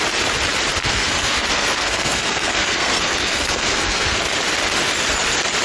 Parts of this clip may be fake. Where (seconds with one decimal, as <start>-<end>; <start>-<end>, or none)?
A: 0.8-4.2